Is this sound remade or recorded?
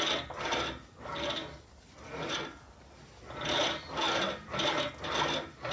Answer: recorded